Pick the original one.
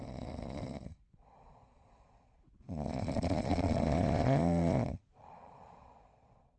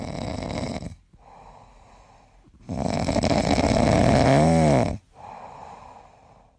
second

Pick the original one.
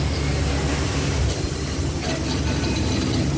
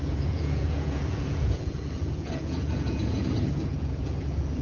first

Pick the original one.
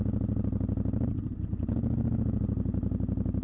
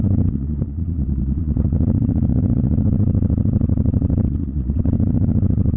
first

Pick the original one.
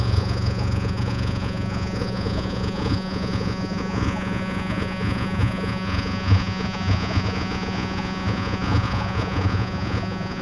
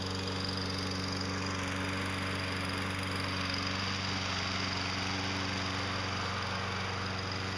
second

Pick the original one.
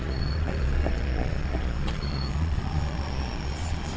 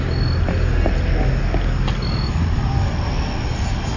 second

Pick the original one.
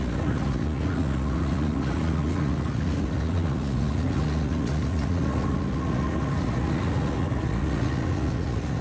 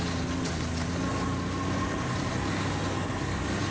second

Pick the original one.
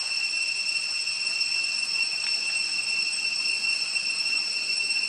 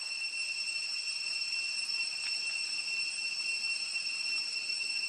second